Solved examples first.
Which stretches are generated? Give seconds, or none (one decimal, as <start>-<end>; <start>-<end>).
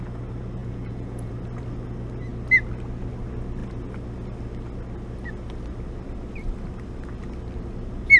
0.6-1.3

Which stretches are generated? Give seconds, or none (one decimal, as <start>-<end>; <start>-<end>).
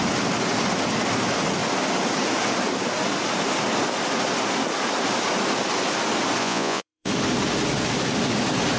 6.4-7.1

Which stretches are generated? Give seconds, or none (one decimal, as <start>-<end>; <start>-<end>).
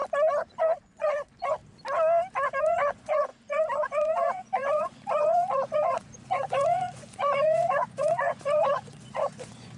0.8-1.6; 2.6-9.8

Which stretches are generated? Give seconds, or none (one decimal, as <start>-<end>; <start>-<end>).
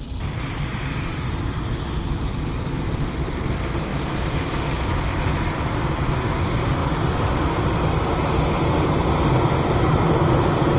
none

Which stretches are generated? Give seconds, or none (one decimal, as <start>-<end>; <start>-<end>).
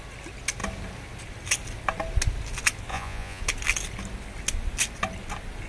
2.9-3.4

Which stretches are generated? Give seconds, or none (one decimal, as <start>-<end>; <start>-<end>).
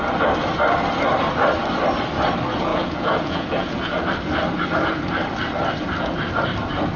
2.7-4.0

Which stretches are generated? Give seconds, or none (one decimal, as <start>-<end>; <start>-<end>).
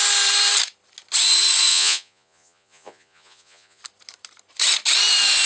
1.7-3.8